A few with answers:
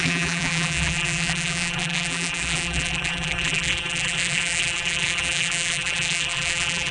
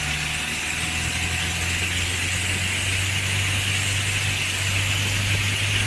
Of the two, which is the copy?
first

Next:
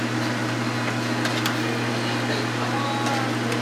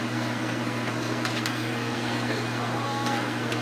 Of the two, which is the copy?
second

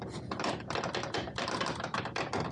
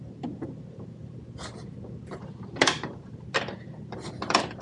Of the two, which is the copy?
second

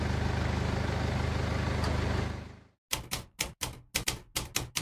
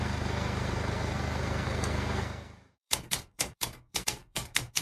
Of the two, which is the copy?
second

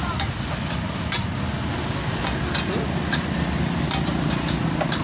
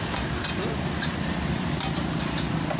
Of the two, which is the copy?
second